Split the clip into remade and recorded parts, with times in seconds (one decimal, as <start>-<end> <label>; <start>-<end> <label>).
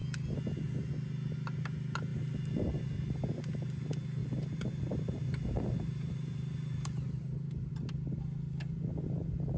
0.0-2.1 recorded; 2.1-2.9 remade; 2.9-4.2 recorded; 4.2-7.7 remade; 7.7-9.6 recorded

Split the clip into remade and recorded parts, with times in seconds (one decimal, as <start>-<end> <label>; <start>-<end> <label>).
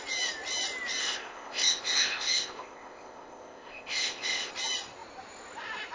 0.0-1.0 recorded; 1.0-4.5 remade; 4.5-5.9 recorded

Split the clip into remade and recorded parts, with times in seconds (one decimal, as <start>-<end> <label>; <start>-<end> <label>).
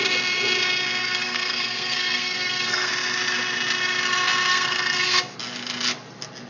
0.0-1.0 recorded; 1.0-2.9 remade; 2.9-4.5 recorded; 4.5-5.3 remade; 5.3-6.5 recorded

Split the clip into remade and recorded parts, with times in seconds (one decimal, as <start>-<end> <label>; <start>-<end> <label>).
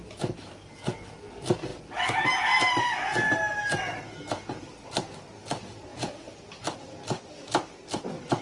0.0-5.9 recorded; 5.9-6.5 remade; 6.5-8.4 recorded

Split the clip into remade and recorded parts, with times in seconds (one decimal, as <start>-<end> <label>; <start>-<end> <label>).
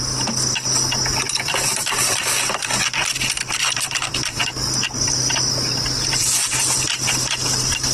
0.0-1.1 recorded; 1.1-5.1 remade; 5.1-6.2 recorded; 6.2-7.1 remade; 7.1-7.9 recorded